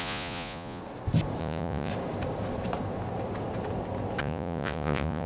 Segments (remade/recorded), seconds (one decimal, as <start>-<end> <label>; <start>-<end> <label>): 0.0-0.8 remade; 0.8-1.4 recorded; 1.4-1.9 remade; 1.9-4.2 recorded; 4.2-5.3 remade